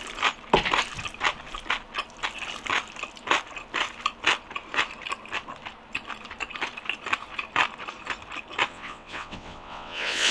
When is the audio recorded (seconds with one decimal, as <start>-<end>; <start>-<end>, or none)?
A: 0.0-8.7